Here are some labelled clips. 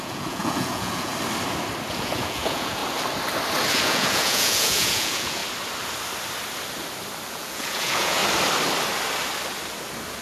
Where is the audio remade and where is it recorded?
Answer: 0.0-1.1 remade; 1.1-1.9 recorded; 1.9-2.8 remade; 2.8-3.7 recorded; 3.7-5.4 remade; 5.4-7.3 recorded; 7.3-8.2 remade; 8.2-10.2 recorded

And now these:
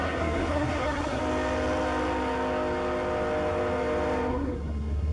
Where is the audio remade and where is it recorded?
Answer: 0.0-1.2 remade; 1.2-4.3 recorded; 4.3-5.1 remade

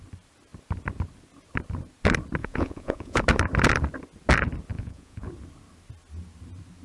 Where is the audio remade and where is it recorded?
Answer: 0.0-2.4 recorded; 2.4-3.2 remade; 3.2-4.7 recorded; 4.7-5.3 remade; 5.3-6.8 recorded

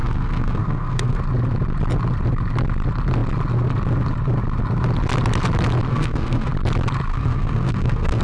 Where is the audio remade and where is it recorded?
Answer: 0.0-1.2 remade; 1.2-5.9 recorded; 5.9-6.5 remade; 6.5-7.1 recorded; 7.1-8.2 remade

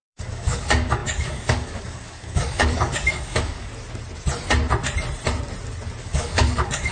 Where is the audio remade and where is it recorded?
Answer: 0.0-3.7 remade; 3.7-6.0 recorded; 6.0-6.9 remade

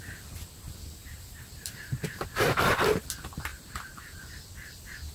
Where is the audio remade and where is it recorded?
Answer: 0.0-1.0 recorded; 1.0-3.1 remade; 3.1-3.5 recorded; 3.5-4.2 remade; 4.2-5.1 recorded